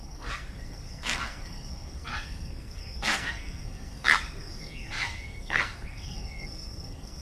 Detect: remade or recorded remade